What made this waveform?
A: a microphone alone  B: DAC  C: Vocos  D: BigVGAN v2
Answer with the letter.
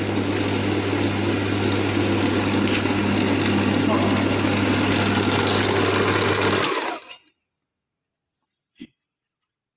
A